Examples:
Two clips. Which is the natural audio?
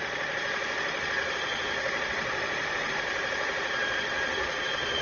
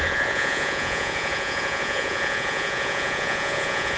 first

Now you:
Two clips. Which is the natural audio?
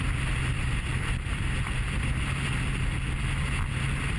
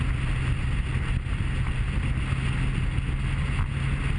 second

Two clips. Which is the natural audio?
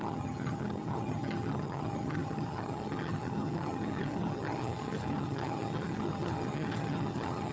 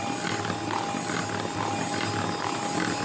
second